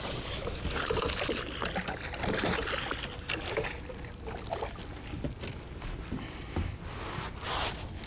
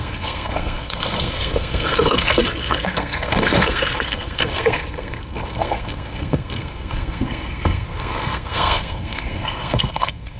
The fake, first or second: second